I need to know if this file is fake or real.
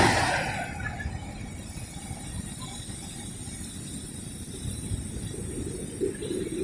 real